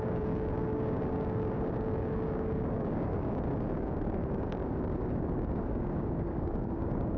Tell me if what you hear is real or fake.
fake